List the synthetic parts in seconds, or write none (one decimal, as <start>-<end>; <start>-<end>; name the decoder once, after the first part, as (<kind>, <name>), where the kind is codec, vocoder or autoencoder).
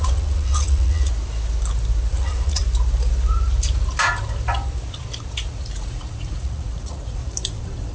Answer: 0.0-1.1 (vocoder, Vocos); 2.1-2.6; 5.4-7.2